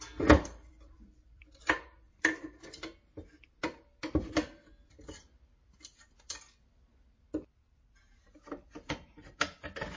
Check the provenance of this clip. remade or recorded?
remade